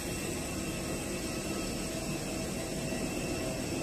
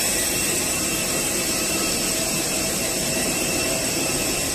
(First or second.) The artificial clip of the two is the second